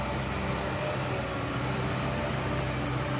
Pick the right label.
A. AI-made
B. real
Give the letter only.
B